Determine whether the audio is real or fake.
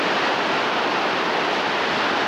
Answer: fake